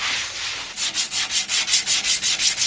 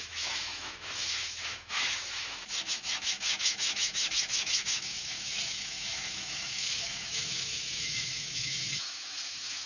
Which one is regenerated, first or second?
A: second